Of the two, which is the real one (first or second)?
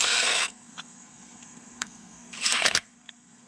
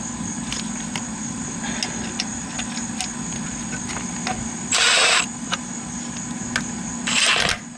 second